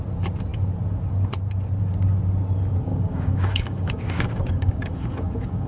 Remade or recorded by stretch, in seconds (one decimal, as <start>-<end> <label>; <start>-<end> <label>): 0.0-2.9 recorded; 2.9-5.7 remade